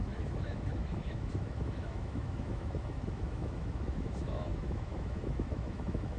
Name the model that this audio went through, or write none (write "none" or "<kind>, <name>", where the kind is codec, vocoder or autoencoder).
autoencoder, DAC-VAE